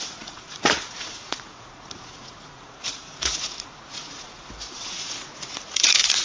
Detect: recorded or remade remade